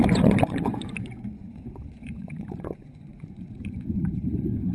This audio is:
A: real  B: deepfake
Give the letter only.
B